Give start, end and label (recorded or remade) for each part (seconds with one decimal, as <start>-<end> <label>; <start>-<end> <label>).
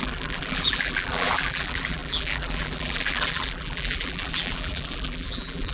0.0-5.7 remade